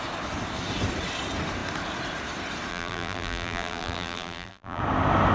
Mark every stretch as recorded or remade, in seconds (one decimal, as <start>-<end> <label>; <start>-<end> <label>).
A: 0.0-2.7 recorded; 2.7-4.8 remade; 4.8-5.3 recorded